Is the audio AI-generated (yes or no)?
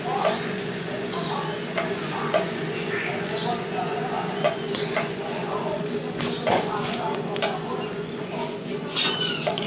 yes